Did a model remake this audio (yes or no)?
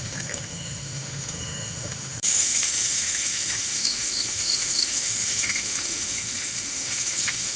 yes